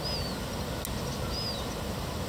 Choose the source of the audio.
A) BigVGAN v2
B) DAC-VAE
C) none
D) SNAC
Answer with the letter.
C